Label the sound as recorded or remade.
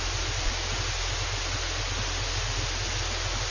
recorded